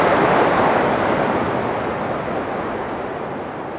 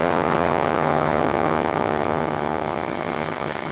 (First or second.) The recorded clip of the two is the first